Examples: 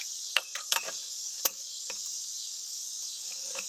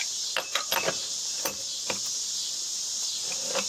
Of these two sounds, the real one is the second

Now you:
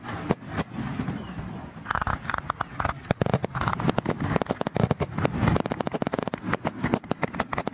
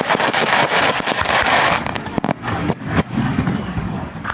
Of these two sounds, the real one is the first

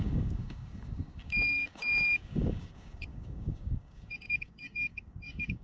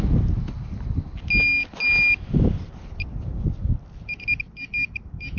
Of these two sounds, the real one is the second